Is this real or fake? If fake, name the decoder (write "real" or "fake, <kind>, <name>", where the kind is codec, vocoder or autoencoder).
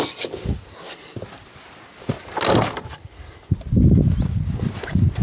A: real